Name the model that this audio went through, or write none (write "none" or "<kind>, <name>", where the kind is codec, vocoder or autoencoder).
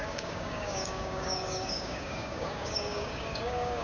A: codec, DAC